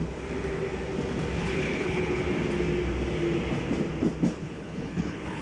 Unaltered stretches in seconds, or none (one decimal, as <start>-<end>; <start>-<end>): 0.0-1.4; 2.2-4.4